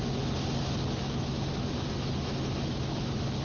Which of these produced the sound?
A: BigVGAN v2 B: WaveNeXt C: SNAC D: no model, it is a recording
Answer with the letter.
D